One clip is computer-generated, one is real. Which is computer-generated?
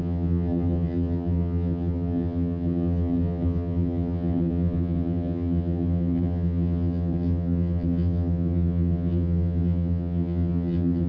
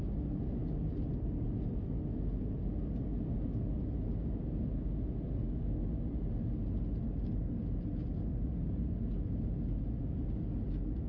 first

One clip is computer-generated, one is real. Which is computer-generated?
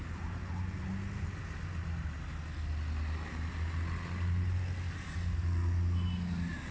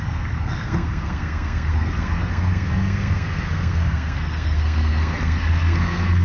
second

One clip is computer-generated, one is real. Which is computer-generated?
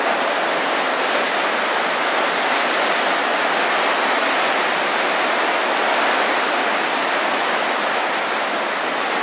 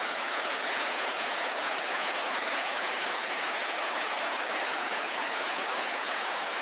second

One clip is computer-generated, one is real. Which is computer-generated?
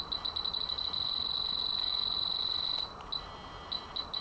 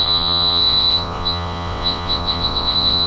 second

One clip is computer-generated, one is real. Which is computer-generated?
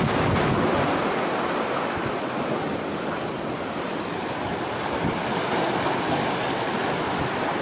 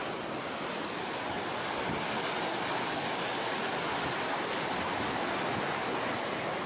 first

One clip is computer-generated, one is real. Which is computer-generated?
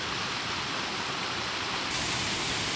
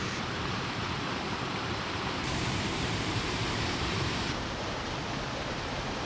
second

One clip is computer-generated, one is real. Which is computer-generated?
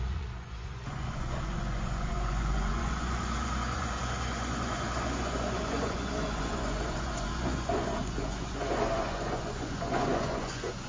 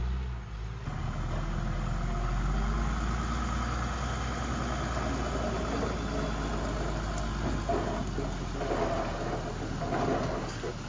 first